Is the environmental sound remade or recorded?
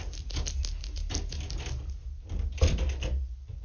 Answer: recorded